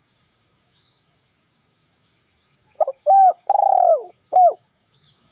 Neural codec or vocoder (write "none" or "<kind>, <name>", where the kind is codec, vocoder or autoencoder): codec, DAC